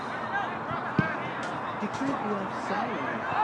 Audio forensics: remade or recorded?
recorded